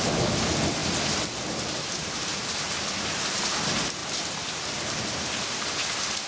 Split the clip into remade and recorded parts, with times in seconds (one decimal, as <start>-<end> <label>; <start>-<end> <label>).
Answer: 0.0-6.3 recorded